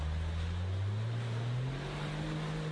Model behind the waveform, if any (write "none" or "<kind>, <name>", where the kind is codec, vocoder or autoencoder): none